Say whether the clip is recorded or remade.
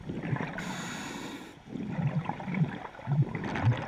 recorded